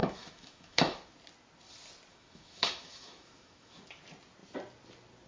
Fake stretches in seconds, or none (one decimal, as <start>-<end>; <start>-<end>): 0.0-1.1; 2.1-3.8

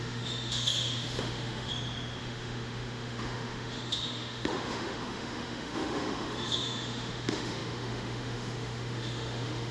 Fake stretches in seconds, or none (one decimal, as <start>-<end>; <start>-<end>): 0.0-1.7; 2.2-9.7

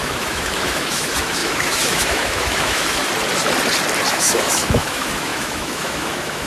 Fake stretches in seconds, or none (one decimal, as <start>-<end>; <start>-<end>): 0.0-3.0; 4.1-6.5

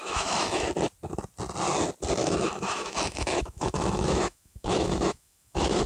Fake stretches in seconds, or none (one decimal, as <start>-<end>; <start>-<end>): 0.0-0.7; 2.2-5.9

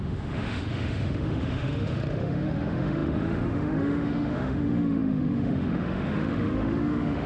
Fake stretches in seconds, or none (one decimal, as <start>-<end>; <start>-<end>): 0.0-7.3

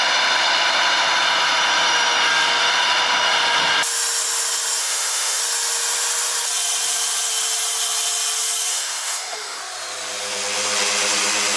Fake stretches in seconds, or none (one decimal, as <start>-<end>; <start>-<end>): 4.8-5.4; 8.7-9.6

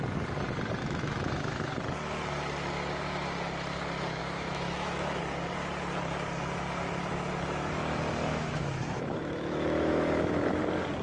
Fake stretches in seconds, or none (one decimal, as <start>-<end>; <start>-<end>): 0.8-1.7; 4.2-5.2; 8.3-10.6

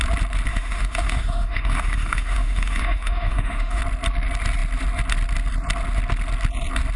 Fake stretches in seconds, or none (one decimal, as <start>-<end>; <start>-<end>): 0.5-3.8